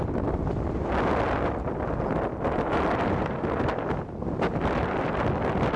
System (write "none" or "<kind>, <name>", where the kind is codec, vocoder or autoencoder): none